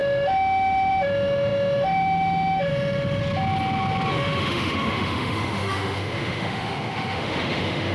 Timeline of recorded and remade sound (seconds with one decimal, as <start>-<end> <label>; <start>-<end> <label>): 0.0-3.2 remade; 3.2-4.1 recorded; 4.1-7.9 remade